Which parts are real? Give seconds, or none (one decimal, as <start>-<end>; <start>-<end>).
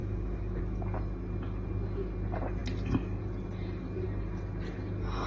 0.6-5.3